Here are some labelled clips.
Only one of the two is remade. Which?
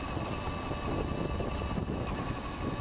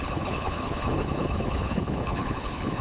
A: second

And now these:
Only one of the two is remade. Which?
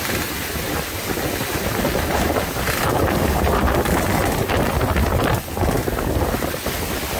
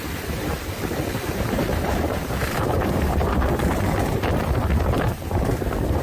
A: second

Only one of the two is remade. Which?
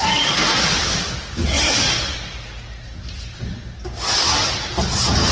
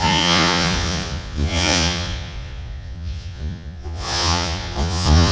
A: second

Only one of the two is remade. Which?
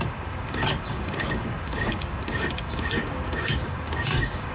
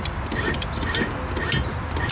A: first